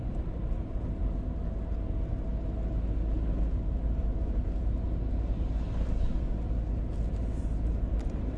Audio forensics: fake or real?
real